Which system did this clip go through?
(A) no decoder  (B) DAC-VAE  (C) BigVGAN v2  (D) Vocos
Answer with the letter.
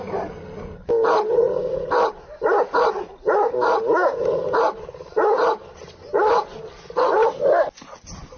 A